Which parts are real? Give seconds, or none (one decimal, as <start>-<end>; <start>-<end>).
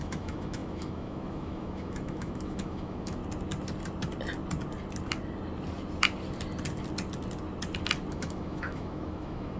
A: 3.2-8.1